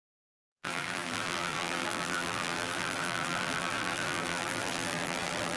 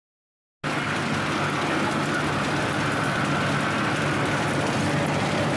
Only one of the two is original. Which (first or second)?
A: second